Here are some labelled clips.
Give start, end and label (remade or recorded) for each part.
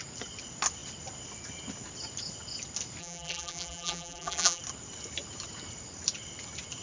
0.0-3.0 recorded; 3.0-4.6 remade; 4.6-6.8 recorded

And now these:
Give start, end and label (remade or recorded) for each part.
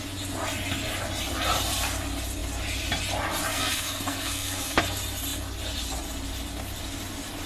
0.0-3.5 recorded; 3.5-4.8 remade; 4.8-7.5 recorded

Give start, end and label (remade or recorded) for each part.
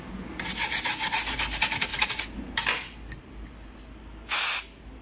0.0-5.0 recorded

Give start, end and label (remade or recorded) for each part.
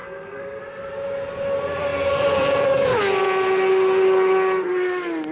0.0-0.6 remade; 0.6-5.3 recorded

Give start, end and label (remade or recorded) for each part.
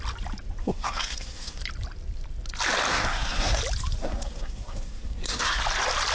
0.0-0.6 recorded; 0.6-1.6 remade; 1.6-2.9 recorded; 2.9-3.6 remade; 3.6-4.0 recorded; 4.0-5.6 remade; 5.6-6.1 recorded